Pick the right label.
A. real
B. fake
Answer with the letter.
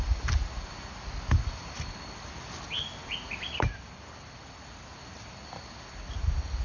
A